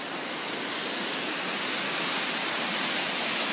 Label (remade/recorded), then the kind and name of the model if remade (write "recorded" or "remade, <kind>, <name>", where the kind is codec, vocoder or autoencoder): recorded